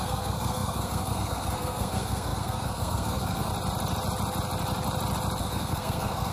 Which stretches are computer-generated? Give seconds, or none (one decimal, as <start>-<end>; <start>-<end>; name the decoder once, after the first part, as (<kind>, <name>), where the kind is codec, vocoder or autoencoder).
0.0-3.5 (codec, SNAC); 5.4-6.3